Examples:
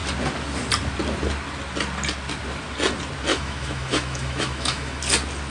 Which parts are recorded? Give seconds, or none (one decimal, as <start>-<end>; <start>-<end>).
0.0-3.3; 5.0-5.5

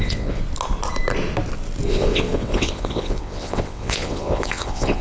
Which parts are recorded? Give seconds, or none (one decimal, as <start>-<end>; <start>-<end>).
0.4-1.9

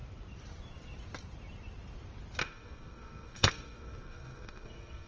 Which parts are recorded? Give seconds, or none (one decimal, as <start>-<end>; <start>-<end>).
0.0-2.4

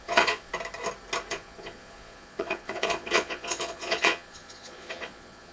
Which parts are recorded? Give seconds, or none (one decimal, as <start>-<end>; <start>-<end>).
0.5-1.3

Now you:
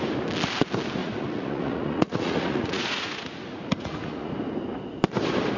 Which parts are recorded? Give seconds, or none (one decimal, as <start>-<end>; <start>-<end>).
0.0-1.0; 4.3-5.6

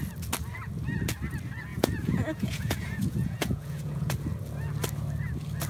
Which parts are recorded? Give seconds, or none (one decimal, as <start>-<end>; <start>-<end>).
0.0-1.7; 4.1-5.7